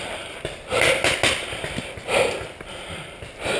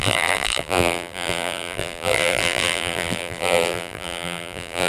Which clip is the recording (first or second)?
first